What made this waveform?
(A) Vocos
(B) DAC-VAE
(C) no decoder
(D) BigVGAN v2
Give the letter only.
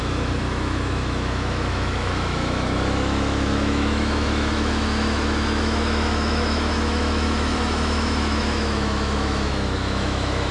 B